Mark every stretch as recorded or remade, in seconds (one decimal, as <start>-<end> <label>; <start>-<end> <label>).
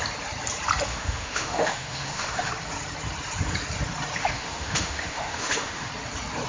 0.0-0.9 recorded; 0.9-2.5 remade; 2.5-4.2 recorded; 4.2-5.9 remade; 5.9-6.5 recorded